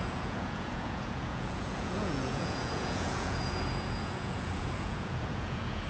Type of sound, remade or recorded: remade